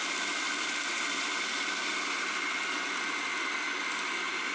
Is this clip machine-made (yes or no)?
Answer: no